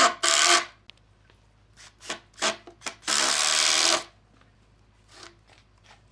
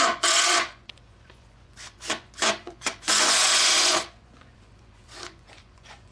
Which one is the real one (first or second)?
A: first